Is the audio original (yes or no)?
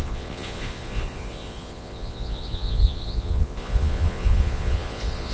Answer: no